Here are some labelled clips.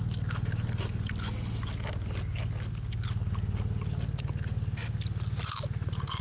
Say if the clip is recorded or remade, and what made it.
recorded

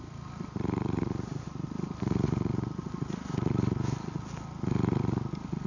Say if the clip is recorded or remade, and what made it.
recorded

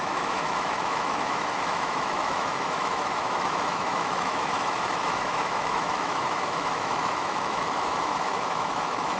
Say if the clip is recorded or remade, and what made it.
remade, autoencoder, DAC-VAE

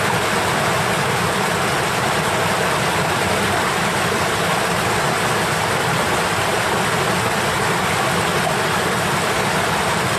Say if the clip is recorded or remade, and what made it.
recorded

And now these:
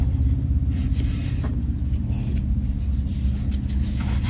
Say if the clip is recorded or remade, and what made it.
recorded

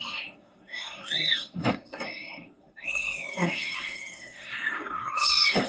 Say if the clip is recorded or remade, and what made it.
remade, codec, SNAC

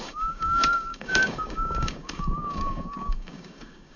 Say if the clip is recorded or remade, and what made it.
remade, codec, DAC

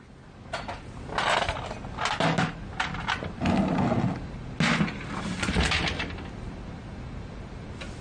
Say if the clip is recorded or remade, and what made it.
recorded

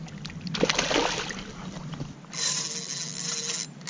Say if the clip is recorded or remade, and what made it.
recorded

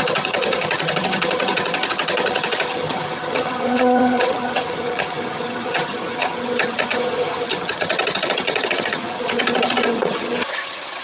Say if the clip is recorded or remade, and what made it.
remade, vocoder, HiFi-GAN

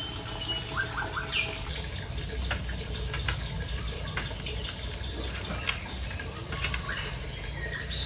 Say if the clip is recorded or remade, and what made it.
recorded